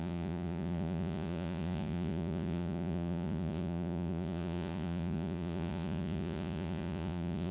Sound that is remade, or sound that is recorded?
remade